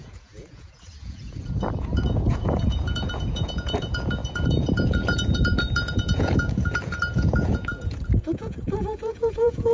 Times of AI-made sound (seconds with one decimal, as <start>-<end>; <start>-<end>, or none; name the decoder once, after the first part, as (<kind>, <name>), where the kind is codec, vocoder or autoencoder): 0.0-9.7 (vocoder, Vocos)